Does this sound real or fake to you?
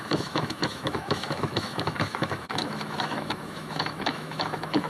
fake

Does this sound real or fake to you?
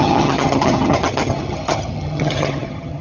fake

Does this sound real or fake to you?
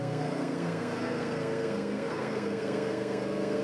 fake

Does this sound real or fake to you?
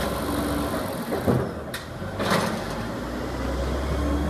real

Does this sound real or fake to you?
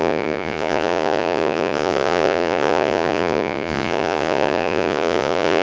fake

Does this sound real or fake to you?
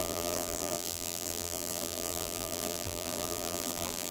fake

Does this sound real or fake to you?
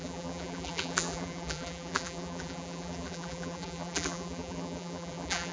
fake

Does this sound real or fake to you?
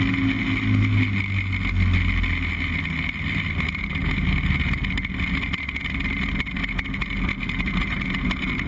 real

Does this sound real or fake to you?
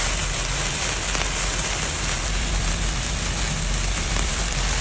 fake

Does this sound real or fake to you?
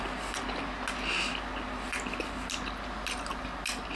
real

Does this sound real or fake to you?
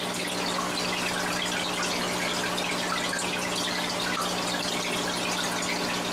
real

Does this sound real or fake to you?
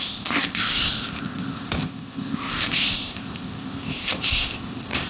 fake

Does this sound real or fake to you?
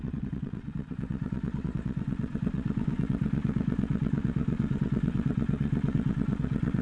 fake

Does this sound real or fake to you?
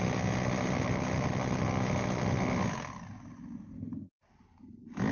real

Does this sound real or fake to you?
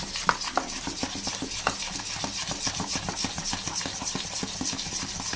real